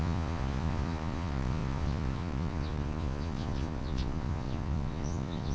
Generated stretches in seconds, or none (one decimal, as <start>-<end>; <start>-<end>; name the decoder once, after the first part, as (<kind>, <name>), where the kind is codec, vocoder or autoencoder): 0.0-5.5 (vocoder, Vocos)